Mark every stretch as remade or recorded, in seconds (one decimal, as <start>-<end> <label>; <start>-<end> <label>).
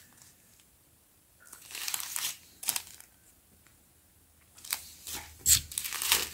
0.0-6.3 recorded